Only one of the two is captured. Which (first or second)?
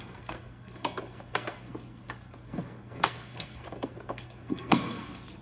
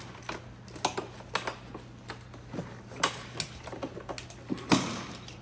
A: second